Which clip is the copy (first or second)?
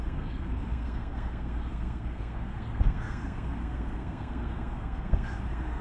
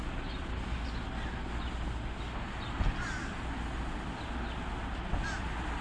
first